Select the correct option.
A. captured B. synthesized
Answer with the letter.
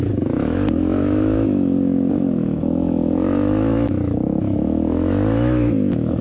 B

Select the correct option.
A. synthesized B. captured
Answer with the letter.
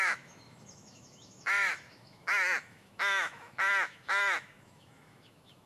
A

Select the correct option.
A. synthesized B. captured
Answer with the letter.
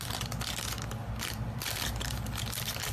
B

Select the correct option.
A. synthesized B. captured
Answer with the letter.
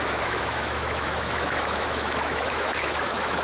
A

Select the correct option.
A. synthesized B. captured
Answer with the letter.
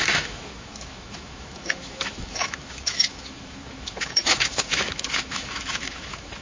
A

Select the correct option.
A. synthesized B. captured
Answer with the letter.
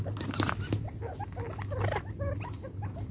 B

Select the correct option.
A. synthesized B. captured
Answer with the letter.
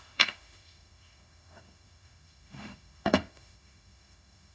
A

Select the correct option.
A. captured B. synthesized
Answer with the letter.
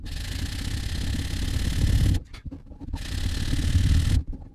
A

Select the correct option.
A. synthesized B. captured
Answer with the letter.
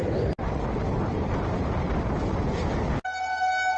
B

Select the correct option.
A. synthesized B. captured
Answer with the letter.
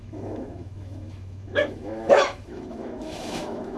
A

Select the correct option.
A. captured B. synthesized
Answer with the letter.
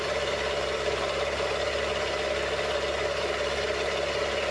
A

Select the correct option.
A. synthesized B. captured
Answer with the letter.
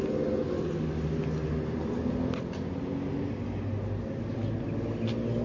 B